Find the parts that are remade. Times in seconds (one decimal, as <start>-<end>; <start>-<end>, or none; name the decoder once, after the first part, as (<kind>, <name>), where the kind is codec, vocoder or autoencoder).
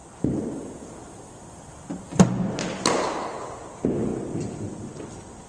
0.0-0.5 (vocoder, BigVGAN v2)